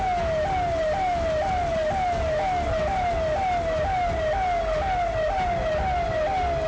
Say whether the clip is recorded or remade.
recorded